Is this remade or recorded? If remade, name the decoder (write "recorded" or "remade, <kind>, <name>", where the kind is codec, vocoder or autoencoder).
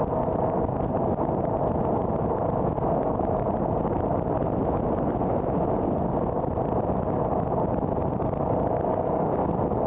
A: recorded